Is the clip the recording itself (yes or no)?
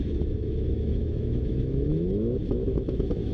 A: no